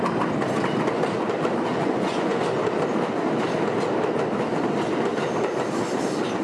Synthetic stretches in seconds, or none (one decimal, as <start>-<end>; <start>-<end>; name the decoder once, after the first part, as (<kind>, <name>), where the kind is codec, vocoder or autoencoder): 1.7-2.4 (vocoder, Vocos)